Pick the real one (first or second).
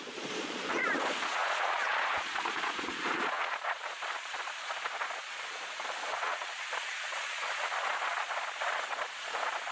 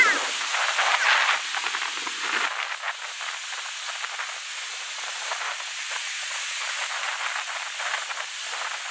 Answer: second